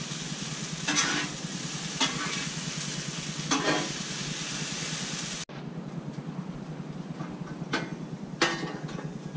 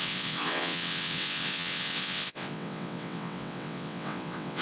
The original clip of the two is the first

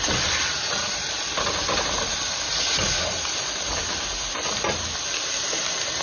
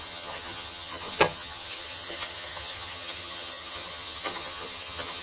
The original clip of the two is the first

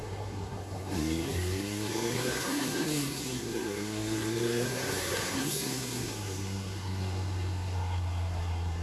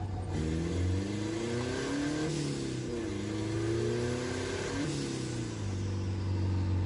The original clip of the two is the second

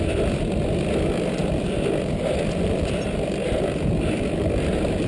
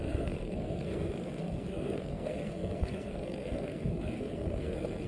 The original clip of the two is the first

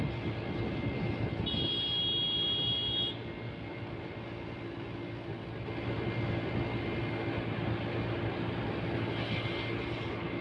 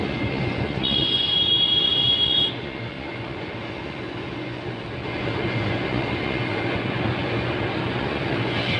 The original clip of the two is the first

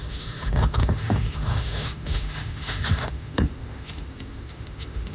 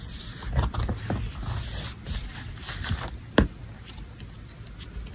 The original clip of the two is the second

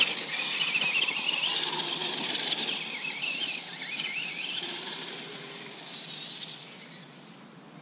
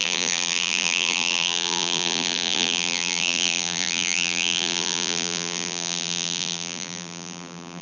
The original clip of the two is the first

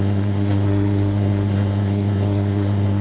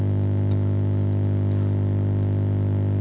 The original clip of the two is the second